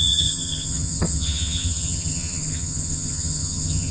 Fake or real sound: fake